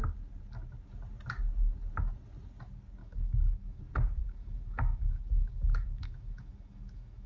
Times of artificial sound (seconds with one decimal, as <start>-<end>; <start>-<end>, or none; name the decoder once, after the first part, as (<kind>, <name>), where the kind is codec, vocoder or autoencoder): 3.0-3.8 (autoencoder, DAC-VAE); 4.2-7.3